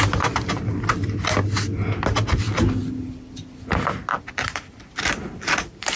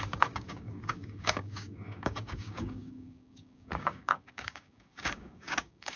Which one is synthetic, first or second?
second